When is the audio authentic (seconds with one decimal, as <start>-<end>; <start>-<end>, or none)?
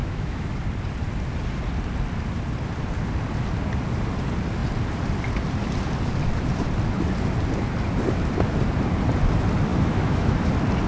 0.5-9.7; 10.5-10.9